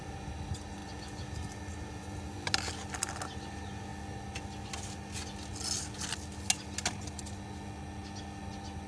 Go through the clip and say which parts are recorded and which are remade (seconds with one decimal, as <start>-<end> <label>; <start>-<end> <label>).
0.0-8.9 recorded